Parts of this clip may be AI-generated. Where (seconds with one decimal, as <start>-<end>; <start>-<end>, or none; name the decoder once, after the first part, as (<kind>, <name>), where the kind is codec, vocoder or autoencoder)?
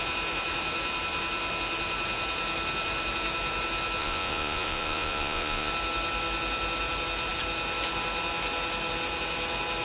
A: 4.0-5.7 (vocoder, Vocos)